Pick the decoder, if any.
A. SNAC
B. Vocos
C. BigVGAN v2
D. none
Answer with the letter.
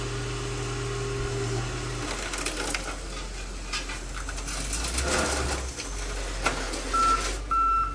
D